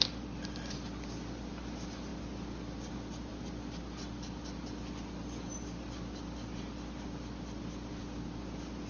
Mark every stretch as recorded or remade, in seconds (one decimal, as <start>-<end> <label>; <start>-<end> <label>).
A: 0.0-8.9 recorded